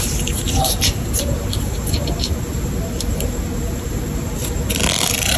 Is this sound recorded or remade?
recorded